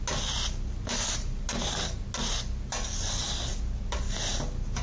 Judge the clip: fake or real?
real